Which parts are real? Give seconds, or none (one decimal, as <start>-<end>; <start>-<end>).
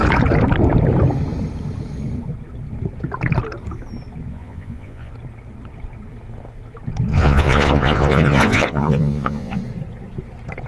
0.0-4.3; 5.1-7.1; 9.6-10.7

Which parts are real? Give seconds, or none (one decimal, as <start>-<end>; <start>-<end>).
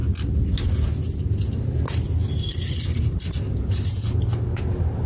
0.0-5.1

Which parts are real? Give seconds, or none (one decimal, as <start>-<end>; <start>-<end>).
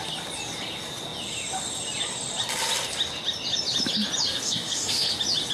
0.0-4.3; 5.1-5.5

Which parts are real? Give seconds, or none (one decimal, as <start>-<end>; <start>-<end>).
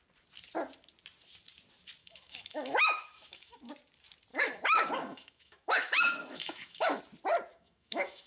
0.0-2.0; 3.7-4.3; 7.0-7.5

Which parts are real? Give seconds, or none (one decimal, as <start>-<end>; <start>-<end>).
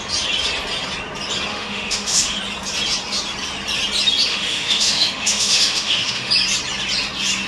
0.0-1.5; 2.4-4.3; 6.3-7.5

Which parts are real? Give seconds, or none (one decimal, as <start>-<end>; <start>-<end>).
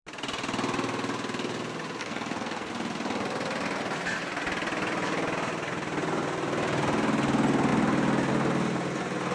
0.0-2.0; 2.7-9.3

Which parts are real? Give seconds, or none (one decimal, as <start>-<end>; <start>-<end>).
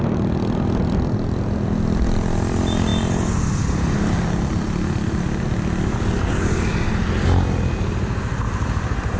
0.0-9.2